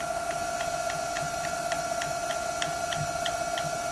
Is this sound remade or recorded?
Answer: recorded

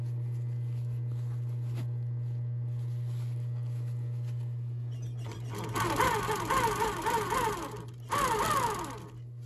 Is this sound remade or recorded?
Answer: recorded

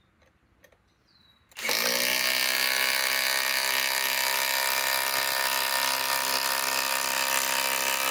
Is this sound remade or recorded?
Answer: recorded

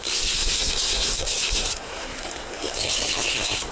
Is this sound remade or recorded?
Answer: remade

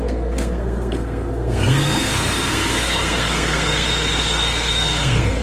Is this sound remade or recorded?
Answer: remade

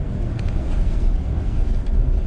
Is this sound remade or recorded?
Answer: remade